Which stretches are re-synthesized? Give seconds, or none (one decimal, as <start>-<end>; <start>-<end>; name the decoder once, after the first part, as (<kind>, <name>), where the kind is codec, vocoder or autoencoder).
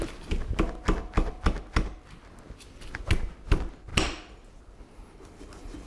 none